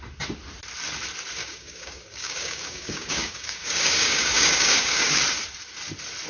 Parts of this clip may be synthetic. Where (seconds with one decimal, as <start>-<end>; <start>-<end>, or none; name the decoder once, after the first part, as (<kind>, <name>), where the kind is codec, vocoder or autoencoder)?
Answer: 1.4-5.2 (codec, DAC)